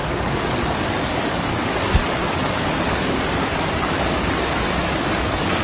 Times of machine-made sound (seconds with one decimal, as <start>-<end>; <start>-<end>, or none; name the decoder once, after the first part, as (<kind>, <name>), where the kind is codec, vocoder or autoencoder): 0.0-5.6 (codec, DAC)